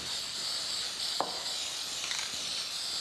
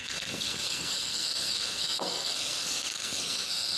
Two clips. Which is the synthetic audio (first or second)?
second